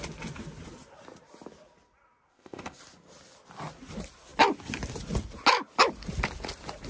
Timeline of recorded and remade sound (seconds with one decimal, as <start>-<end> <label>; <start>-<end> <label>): 0.0-2.3 recorded; 2.3-2.8 remade; 2.8-6.9 recorded